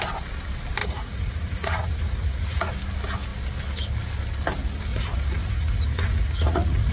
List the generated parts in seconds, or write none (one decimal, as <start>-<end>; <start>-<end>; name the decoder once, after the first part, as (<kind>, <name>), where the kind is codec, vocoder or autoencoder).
0.8-2.7 (vocoder, Vocos); 4.9-6.9